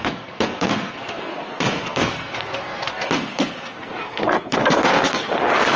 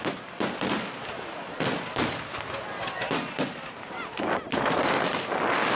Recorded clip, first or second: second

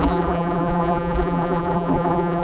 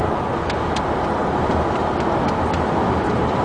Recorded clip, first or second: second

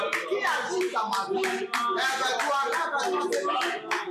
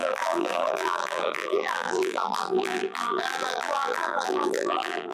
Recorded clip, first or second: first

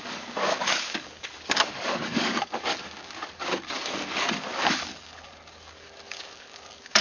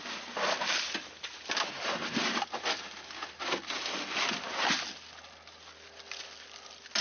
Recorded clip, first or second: second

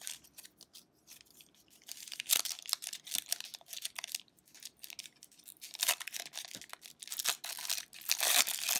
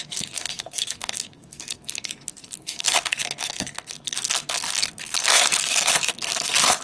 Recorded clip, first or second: first